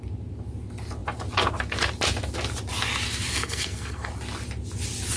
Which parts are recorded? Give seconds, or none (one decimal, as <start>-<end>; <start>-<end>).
0.0-3.3; 4.1-5.2